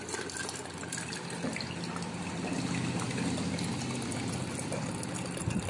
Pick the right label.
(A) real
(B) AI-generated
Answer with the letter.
A